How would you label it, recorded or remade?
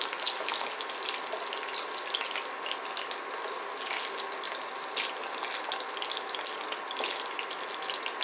recorded